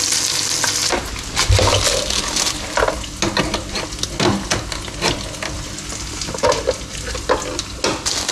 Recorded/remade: recorded